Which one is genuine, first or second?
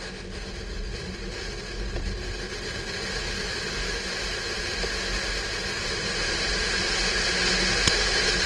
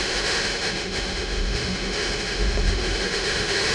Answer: first